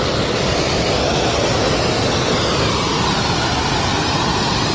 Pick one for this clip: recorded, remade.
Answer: recorded